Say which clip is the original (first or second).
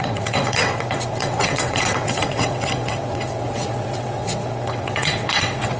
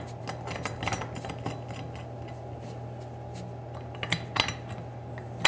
second